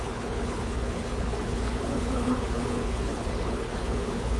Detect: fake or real fake